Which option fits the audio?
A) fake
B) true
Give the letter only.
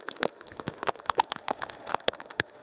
A